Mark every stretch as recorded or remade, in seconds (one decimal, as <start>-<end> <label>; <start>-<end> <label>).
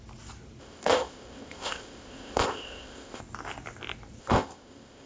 0.0-0.6 recorded; 0.6-3.2 remade; 3.2-4.2 recorded; 4.2-5.1 remade